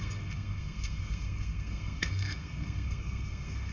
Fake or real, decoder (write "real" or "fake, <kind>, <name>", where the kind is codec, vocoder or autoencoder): fake, codec, SNAC